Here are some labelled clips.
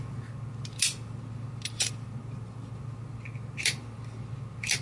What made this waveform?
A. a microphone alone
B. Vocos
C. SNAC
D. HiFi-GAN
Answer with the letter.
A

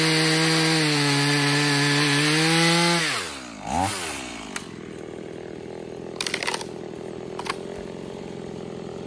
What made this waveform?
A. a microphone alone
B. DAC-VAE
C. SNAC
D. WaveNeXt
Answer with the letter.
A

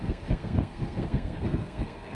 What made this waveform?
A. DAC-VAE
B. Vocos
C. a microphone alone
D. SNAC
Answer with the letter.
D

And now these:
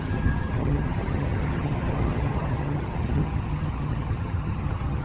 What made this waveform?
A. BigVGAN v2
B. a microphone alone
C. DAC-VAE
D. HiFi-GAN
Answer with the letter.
D